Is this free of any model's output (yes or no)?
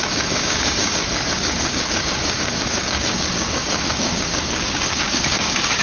no